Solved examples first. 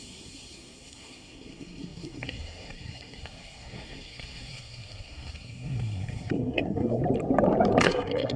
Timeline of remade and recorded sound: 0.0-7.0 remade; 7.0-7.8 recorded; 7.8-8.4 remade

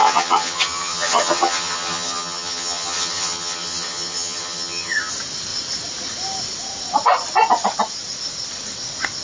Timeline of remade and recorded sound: 0.0-5.1 remade; 5.1-9.2 recorded

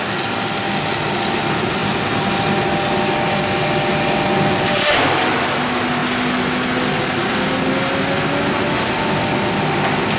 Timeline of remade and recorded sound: 0.0-10.2 recorded

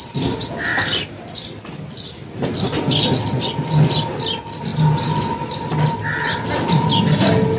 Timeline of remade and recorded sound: 0.0-7.6 recorded

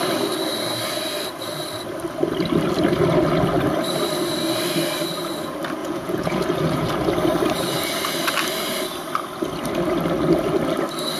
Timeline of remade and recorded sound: 0.0-5.8 recorded; 5.8-6.9 remade; 6.9-11.2 recorded